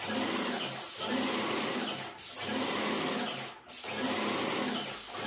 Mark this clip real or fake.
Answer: real